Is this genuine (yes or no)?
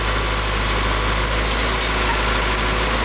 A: yes